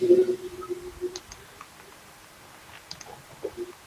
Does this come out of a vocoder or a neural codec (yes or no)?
no